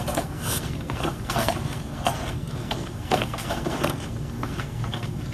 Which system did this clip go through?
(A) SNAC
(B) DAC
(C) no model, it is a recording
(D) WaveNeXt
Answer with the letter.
A